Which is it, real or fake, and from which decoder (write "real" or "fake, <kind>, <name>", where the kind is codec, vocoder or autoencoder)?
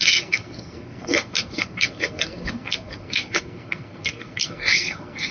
fake, codec, SNAC